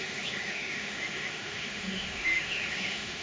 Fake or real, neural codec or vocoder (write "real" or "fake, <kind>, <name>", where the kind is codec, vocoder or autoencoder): fake, autoencoder, DAC-VAE